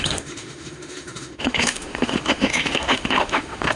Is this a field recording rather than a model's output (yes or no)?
no